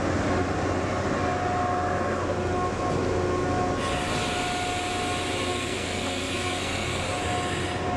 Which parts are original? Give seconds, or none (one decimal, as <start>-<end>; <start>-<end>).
0.0-5.5; 7.0-8.0